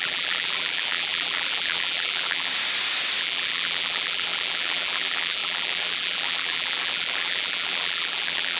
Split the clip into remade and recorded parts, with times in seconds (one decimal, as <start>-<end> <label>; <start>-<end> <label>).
0.0-2.5 remade; 2.5-3.2 recorded; 3.2-8.6 remade

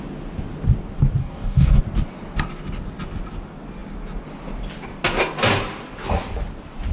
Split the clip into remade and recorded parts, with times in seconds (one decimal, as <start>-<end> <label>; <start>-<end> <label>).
0.0-1.2 recorded; 1.2-1.8 remade; 1.8-6.9 recorded

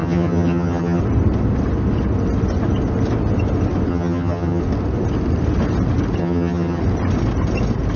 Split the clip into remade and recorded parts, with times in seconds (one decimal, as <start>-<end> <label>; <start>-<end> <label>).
0.0-1.0 remade; 1.0-3.9 recorded; 3.9-4.6 remade; 4.6-6.2 recorded; 6.2-6.8 remade; 6.8-8.0 recorded